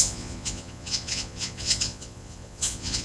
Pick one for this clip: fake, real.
fake